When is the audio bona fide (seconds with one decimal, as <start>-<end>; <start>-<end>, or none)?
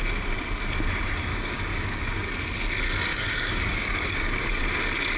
0.0-1.3; 2.1-3.1; 4.6-5.2